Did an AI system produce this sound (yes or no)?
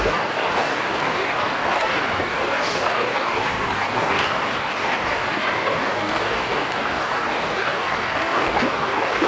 yes